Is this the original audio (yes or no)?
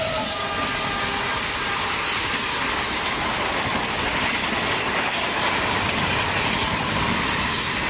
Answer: yes